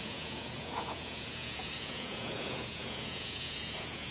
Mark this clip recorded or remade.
remade